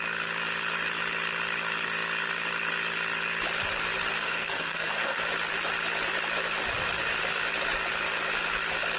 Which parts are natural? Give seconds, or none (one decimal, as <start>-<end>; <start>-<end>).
0.0-4.2; 5.2-9.0